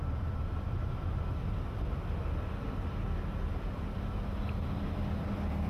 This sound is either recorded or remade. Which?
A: recorded